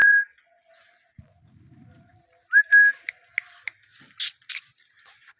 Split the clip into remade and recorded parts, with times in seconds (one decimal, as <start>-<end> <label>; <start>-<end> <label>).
0.0-0.7 remade; 0.7-5.4 recorded